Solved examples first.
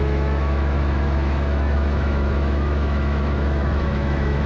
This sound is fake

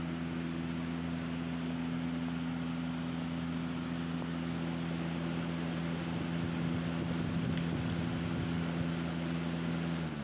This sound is real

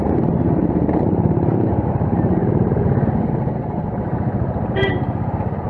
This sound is fake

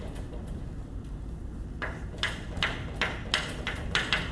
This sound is real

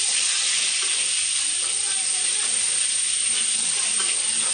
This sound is real